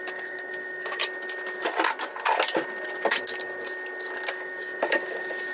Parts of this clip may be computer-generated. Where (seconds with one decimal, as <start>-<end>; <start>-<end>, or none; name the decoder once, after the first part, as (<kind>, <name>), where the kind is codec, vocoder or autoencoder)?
0.0-1.0 (codec, DAC); 4.3-5.5